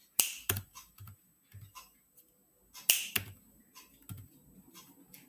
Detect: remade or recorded recorded